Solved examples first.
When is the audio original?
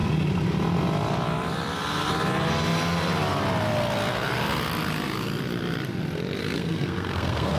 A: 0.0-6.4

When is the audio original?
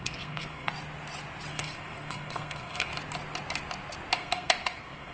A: 0.7-1.5; 2.9-4.1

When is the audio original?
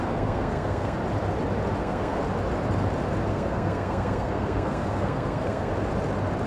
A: 1.0-1.8; 2.2-3.3; 5.7-6.5